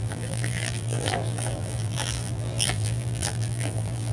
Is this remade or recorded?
remade